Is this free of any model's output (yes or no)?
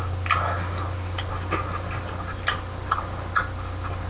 yes